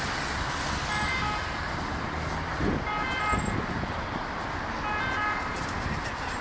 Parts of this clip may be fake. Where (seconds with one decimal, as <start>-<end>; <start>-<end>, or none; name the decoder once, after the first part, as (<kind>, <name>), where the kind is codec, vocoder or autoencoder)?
none